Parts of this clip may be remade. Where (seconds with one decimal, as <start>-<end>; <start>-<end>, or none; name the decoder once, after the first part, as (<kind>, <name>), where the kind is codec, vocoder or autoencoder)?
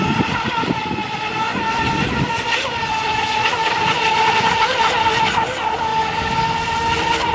none